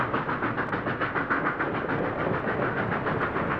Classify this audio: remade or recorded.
recorded